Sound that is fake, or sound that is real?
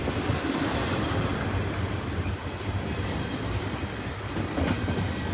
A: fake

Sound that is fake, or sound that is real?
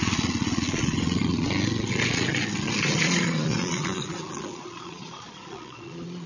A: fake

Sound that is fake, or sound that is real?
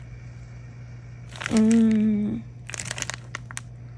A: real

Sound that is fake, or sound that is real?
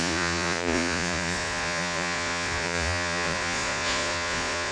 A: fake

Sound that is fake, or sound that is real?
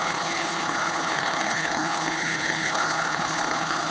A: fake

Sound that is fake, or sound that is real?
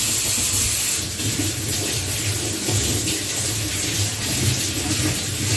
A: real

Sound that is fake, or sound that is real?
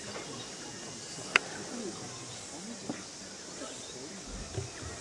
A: real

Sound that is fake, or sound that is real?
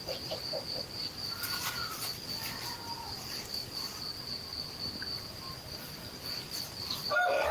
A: fake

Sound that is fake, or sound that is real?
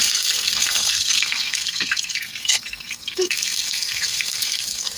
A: fake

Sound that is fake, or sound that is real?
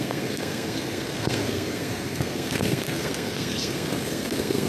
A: fake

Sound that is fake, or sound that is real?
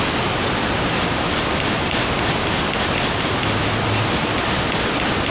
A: real